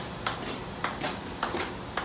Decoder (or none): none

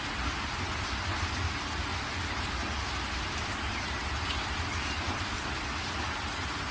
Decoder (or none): none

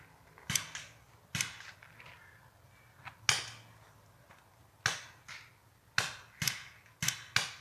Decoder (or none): none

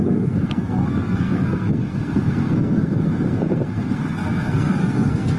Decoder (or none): codec, SNAC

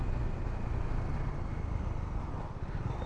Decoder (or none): none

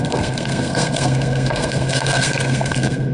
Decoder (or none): codec, SNAC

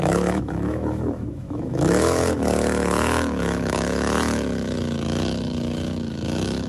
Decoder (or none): autoencoder, DAC-VAE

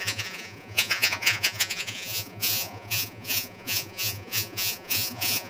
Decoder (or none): vocoder, Vocos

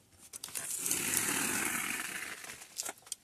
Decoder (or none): none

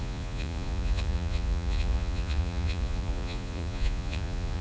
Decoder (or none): vocoder, Vocos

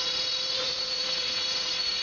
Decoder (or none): vocoder, Vocos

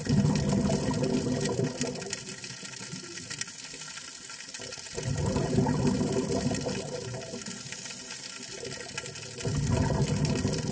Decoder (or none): none